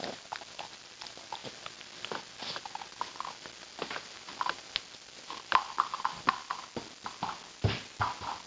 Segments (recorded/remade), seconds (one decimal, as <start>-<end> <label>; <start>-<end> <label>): 0.0-8.5 recorded

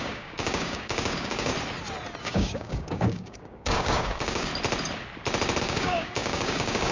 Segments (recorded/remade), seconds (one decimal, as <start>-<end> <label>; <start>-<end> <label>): 0.0-1.5 remade; 1.5-2.2 recorded; 2.2-4.5 remade; 4.5-5.6 recorded; 5.6-6.9 remade

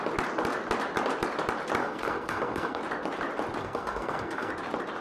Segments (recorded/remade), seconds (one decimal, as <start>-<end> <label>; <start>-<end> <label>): 0.0-1.8 recorded; 1.8-2.8 remade; 2.8-3.6 recorded; 3.6-4.5 remade; 4.5-5.0 recorded

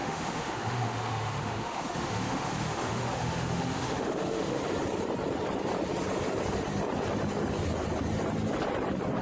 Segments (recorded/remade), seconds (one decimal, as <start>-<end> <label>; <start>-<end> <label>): 0.0-4.6 remade; 4.6-9.2 recorded

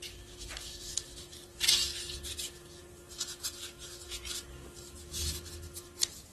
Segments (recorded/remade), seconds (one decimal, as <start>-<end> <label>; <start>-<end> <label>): 0.0-6.3 recorded

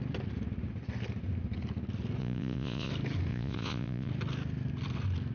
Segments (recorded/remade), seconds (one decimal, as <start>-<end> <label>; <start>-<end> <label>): 0.0-2.2 recorded; 2.2-2.9 remade; 2.9-3.3 recorded; 3.3-4.1 remade; 4.1-5.3 recorded

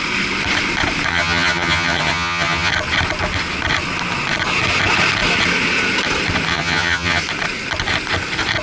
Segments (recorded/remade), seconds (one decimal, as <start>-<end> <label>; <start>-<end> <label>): 0.0-1.1 recorded; 1.1-2.7 remade; 2.7-6.5 recorded; 6.5-7.2 remade; 7.2-8.6 recorded